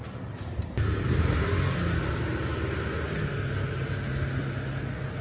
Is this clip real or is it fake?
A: real